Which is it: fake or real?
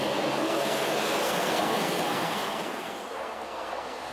fake